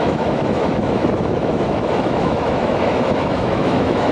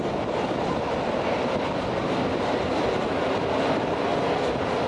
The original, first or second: second